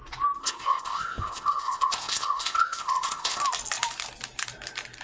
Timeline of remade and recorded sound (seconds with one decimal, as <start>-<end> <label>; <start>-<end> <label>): 0.0-0.4 recorded; 0.4-3.4 remade; 3.4-5.0 recorded